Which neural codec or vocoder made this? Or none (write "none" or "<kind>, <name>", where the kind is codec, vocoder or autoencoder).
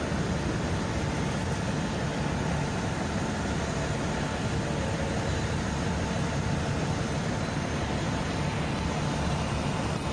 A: none